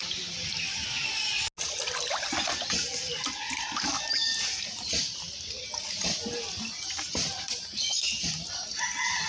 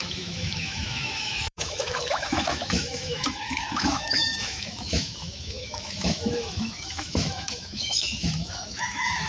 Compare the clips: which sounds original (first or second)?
first